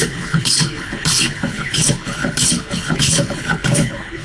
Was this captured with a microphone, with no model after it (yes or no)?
no